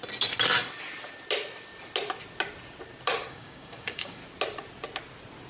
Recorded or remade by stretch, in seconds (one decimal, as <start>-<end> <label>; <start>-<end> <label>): 0.0-3.3 recorded; 3.3-4.2 remade; 4.2-5.5 recorded